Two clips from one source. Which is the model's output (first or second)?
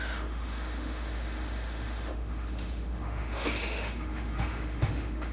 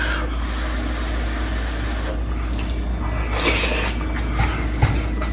first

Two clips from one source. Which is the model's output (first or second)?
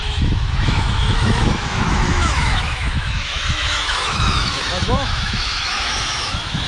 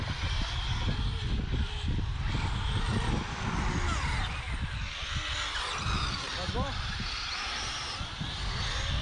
first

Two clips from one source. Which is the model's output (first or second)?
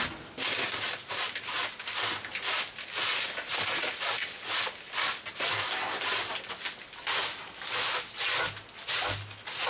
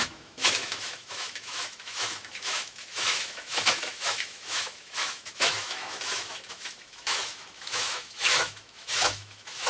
second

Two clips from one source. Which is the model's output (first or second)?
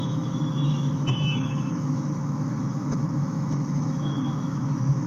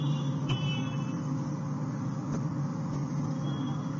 first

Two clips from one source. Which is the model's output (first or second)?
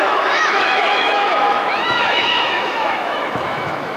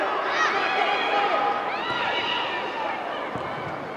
first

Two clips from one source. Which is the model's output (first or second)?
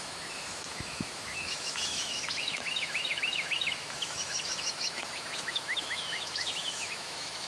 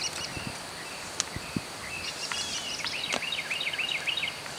first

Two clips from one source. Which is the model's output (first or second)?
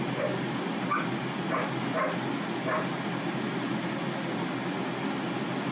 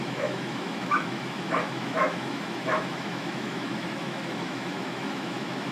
second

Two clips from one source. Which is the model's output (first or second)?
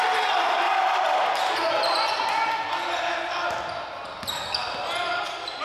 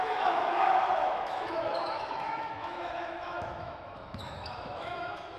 second